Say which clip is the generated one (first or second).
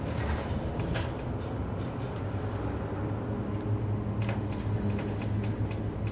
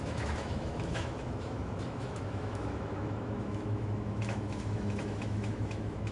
second